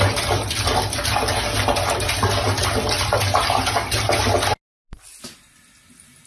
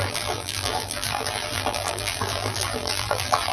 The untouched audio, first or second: first